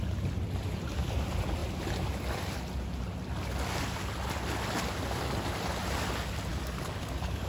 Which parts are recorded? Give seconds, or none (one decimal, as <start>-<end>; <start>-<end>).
0.0-6.5